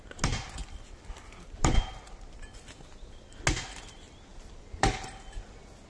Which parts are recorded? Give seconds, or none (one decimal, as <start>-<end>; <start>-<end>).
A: 0.0-0.6; 2.0-4.3; 5.2-5.9